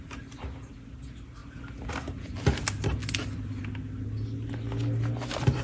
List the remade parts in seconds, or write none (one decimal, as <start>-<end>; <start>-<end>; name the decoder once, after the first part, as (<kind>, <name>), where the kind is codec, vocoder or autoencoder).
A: 3.0-3.6 (vocoder, BigVGAN v2)